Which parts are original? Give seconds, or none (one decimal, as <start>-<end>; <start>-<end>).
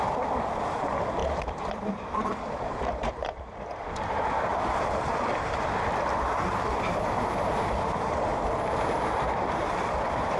4.5-7.5; 8.3-9.1